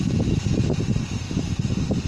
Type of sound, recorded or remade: recorded